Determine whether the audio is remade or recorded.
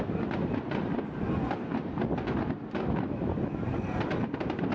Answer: recorded